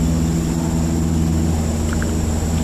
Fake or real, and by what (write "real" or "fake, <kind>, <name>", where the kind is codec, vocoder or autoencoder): real